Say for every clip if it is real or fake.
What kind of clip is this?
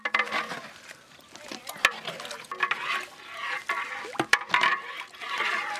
real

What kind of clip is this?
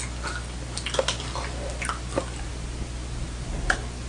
real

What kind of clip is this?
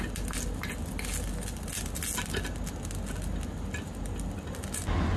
real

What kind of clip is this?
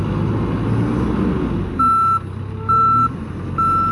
real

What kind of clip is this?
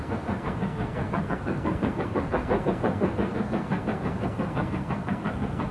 fake